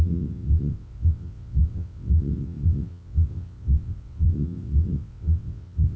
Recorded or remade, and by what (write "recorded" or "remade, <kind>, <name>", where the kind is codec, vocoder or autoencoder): remade, vocoder, WaveNeXt